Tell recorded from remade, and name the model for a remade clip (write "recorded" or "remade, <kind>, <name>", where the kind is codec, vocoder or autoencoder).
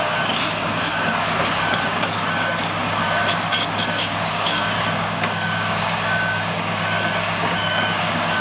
remade, codec, DAC